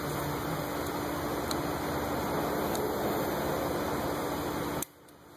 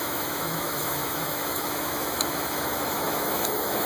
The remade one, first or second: second